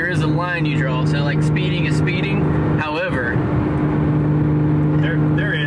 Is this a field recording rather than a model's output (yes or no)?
yes